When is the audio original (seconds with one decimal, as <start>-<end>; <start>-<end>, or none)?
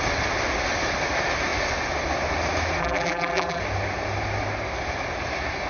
0.0-2.8; 3.6-5.7